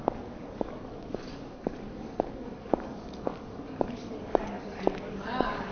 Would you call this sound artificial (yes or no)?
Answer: yes